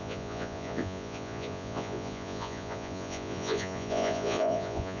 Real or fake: fake